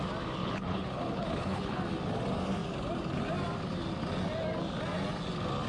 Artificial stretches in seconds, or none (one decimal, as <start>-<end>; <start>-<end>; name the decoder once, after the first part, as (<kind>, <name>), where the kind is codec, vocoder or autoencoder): 0.4-1.8 (codec, HILCodec)